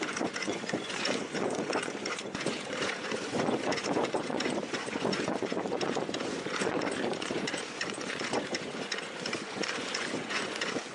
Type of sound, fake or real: fake